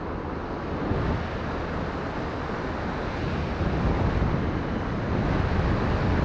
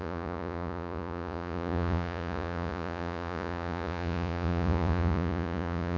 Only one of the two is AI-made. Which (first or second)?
second